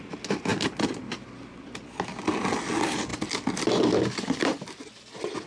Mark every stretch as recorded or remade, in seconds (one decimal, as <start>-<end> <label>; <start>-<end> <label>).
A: 0.0-5.5 recorded